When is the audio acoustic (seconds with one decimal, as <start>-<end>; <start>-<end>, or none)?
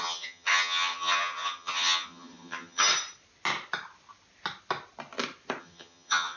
2.9-5.6